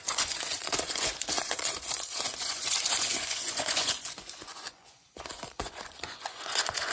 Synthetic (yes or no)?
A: yes